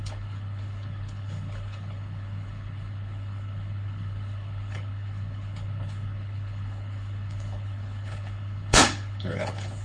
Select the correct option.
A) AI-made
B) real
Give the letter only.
A